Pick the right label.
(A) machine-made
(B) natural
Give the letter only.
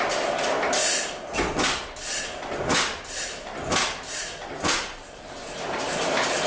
B